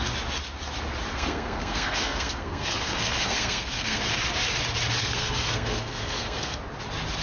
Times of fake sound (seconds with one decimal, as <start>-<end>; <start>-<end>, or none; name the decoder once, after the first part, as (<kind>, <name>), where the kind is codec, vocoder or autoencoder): 1.1-4.0 (codec, SNAC); 5.0-6.6